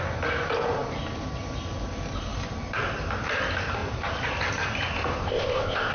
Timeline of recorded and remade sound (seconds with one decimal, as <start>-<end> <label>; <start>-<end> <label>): 0.0-5.2 recorded; 5.2-5.9 remade